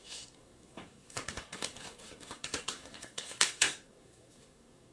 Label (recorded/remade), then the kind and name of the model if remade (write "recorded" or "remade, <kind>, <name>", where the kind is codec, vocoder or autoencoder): remade, codec, SNAC